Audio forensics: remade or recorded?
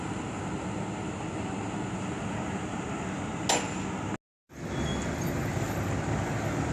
recorded